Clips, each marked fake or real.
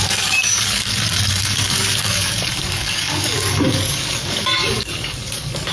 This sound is fake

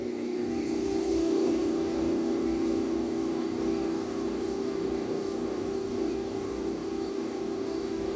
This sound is fake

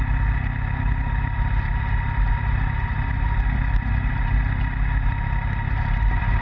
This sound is real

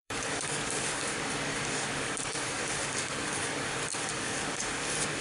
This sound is fake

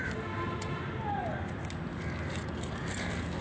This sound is real